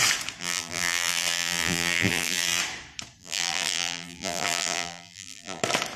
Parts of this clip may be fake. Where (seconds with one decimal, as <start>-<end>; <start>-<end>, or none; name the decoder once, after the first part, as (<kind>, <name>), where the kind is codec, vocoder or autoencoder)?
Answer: 0.4-2.6 (vocoder, BigVGAN v2); 3.2-5.6